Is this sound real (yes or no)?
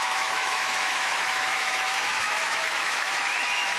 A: no